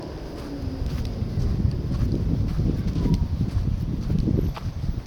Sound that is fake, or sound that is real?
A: fake